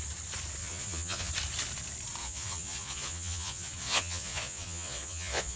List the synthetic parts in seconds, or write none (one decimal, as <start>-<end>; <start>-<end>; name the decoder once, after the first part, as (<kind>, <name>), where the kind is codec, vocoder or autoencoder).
0.6-1.3 (vocoder, Vocos); 2.2-5.6